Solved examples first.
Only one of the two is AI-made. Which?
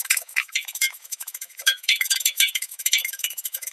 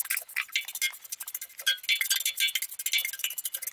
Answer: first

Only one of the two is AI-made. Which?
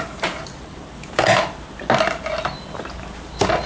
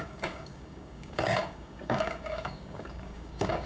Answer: second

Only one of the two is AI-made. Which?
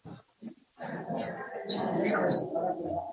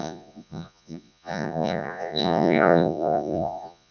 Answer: second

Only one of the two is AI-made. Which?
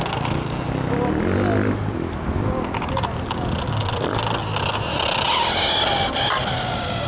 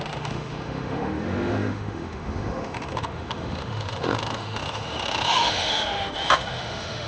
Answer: second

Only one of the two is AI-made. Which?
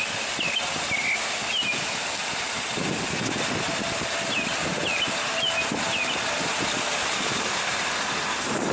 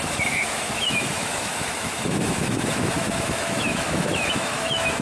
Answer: second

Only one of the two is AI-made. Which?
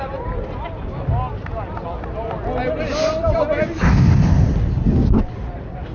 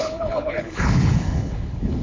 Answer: second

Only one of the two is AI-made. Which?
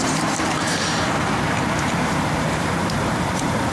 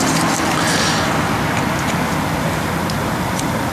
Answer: first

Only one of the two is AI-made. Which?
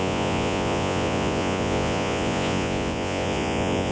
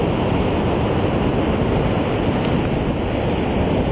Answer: first